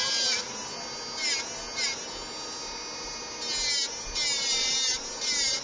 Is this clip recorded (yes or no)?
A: yes